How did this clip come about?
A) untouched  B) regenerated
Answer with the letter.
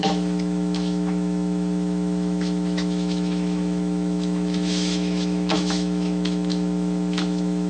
B